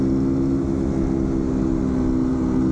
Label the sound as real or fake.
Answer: real